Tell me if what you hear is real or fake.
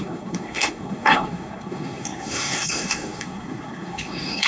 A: fake